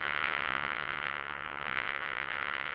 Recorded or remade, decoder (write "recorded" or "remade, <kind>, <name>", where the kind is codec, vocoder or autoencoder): remade, vocoder, WaveNeXt